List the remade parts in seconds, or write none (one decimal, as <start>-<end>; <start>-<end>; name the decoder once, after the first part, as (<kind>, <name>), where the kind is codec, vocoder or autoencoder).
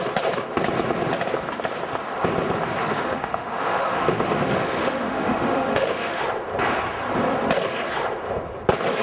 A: 2.8-6.2 (autoencoder, DAC-VAE)